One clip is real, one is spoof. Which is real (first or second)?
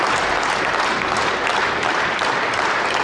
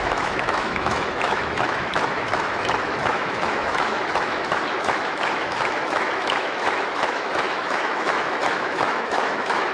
first